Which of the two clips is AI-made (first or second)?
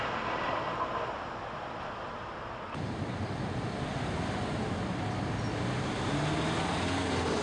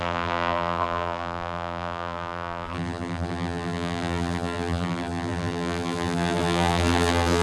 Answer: second